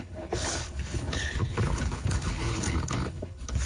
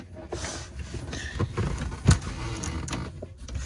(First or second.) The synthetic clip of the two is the first